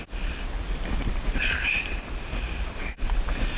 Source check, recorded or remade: recorded